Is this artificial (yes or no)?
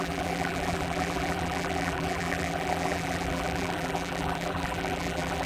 yes